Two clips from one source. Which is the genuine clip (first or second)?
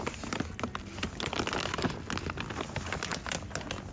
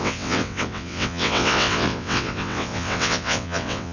first